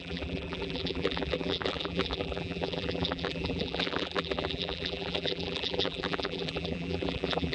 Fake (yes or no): yes